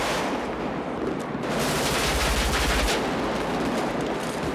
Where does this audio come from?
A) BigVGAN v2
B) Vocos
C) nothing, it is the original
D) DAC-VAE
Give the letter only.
C